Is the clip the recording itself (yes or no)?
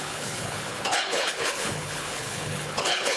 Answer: no